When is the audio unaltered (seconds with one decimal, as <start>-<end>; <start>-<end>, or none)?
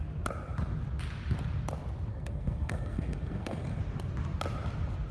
0.0-2.1; 3.8-5.1